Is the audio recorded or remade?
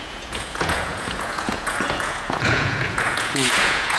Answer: remade